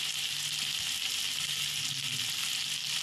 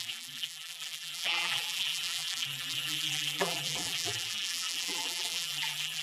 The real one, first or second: first